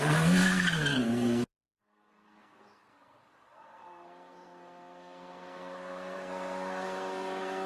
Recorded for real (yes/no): no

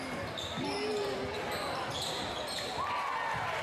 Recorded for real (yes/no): yes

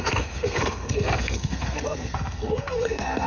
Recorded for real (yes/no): no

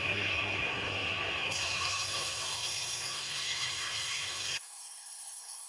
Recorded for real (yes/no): no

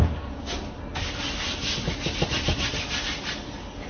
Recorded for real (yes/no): yes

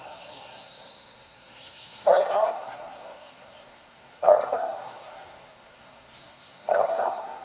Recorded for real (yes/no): no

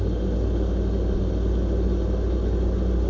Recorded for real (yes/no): yes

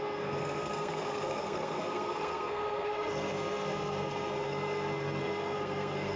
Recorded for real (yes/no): no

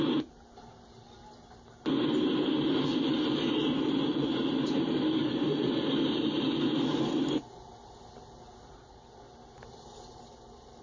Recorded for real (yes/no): yes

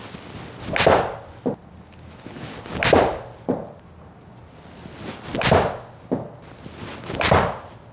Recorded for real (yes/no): yes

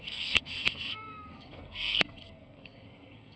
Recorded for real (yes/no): no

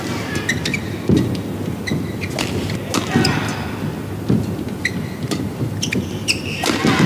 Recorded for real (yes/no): yes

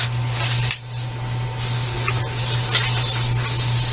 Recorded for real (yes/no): yes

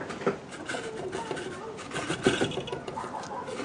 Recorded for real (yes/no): yes